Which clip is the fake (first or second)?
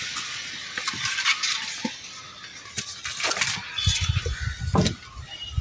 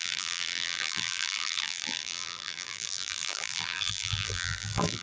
second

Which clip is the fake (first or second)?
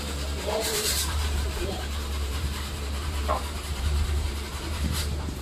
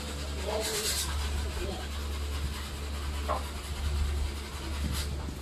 first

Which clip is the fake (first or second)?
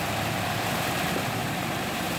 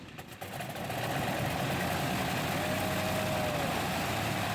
first